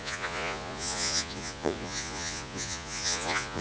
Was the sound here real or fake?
fake